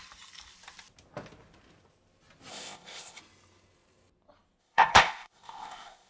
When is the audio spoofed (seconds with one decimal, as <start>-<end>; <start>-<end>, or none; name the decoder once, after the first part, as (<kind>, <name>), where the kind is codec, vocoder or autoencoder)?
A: 2.5-3.2 (codec, ZipCodec); 4.6-6.1